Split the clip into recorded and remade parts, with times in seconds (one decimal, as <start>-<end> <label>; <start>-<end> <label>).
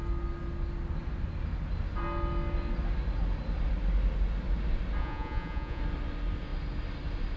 0.0-5.0 recorded; 5.0-5.8 remade; 5.8-7.4 recorded